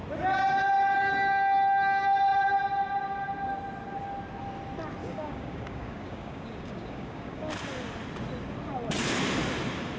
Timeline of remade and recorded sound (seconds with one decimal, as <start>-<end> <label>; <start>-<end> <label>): 0.0-5.0 recorded; 5.0-7.5 remade; 7.5-10.0 recorded